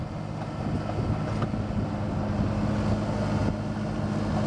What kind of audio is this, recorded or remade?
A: recorded